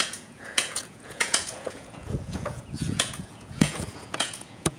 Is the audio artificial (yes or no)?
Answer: yes